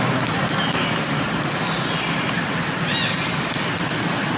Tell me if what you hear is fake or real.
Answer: real